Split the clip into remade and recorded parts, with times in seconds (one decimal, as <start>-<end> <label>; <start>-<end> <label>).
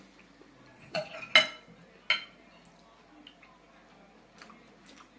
0.0-0.7 recorded; 0.7-1.2 remade; 1.2-5.2 recorded